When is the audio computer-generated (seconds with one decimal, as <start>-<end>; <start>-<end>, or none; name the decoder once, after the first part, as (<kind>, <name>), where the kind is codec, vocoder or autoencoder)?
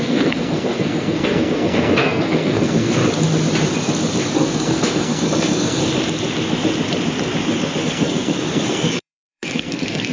0.0-3.0 (codec, SNAC); 4.3-5.8; 7.8-10.1